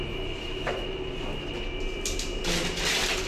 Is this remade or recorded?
recorded